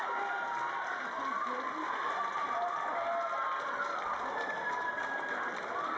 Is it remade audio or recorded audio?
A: recorded